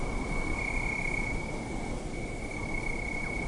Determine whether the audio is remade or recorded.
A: remade